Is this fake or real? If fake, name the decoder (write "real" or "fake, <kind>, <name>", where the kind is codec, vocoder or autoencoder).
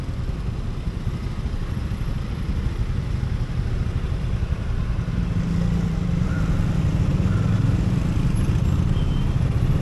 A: real